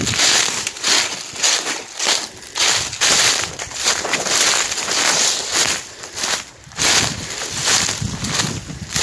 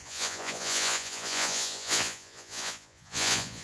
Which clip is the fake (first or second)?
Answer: second